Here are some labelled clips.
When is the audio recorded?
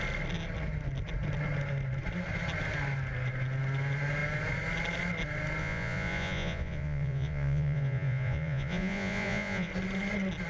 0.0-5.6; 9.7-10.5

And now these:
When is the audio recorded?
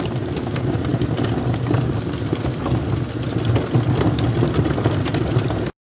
0.0-5.8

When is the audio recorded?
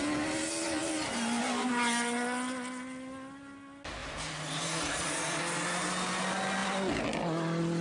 0.0-0.8; 1.4-4.0; 5.4-7.8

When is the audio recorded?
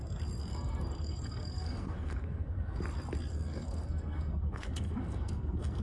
0.0-0.5; 2.8-3.3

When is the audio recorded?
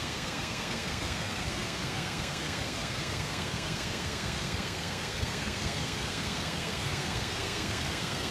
none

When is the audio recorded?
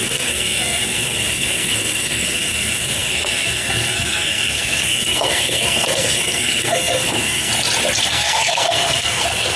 7.5-8.0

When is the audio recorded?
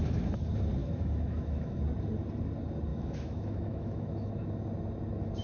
0.0-0.8; 1.8-2.9; 4.3-5.4